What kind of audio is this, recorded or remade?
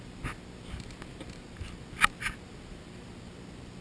recorded